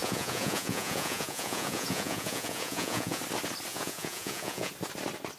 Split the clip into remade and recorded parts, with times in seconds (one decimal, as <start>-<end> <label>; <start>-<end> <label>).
0.0-3.2 remade; 3.2-3.7 recorded; 3.7-4.7 remade; 4.7-5.4 recorded